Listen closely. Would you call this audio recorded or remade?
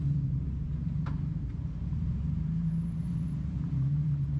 remade